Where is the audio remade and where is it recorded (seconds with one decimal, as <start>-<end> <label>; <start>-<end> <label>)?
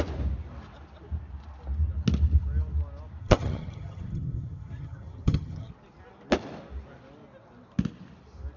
0.0-3.2 recorded; 3.2-5.7 remade; 5.7-8.6 recorded